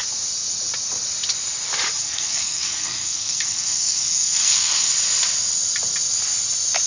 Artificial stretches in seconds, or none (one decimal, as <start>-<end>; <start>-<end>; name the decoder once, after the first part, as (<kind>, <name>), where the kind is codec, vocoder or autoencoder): 2.0-4.9 (codec, SNAC)